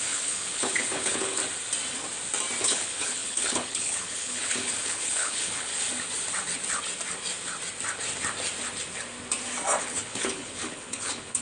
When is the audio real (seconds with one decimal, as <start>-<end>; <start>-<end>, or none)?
1.4-2.6; 5.7-9.8